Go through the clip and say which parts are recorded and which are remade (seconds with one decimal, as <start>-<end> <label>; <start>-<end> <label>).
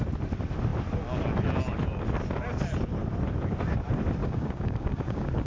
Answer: 0.0-4.2 recorded; 4.2-5.5 remade